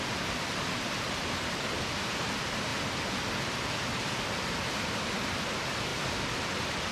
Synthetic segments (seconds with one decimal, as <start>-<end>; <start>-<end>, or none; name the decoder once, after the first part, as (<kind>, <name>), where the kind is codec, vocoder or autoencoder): none